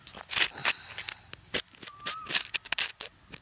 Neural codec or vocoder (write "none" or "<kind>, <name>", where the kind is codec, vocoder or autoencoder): none